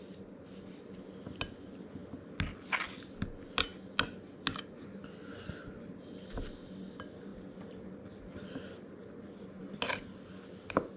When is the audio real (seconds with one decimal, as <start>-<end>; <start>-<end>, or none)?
0.0-11.0